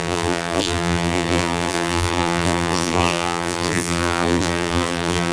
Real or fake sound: fake